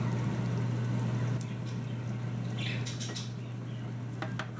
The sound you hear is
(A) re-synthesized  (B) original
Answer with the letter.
B